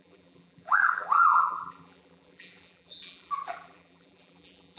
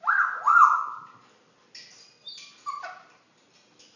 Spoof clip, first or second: first